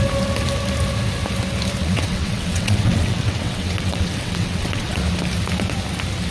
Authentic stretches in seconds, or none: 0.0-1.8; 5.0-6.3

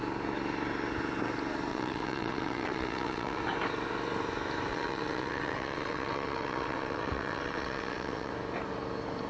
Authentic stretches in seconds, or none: 0.0-1.7; 3.4-4.7; 8.3-9.3

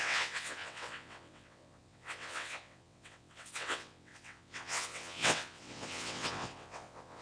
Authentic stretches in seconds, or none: none